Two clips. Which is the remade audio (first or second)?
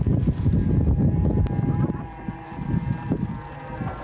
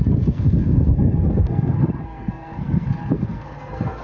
second